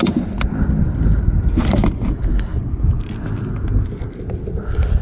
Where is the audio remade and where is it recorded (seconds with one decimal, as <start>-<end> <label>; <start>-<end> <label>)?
0.0-5.0 recorded